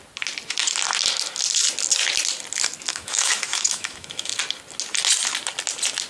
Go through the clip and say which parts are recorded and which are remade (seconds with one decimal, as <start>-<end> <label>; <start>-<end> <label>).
0.0-2.9 recorded; 2.9-4.4 remade; 4.4-6.1 recorded